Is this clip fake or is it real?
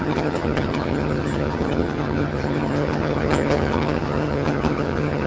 fake